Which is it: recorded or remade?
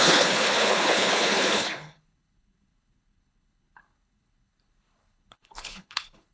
remade